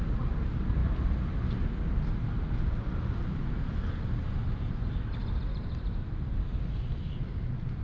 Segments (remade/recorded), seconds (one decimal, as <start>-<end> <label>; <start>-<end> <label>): 0.0-7.8 recorded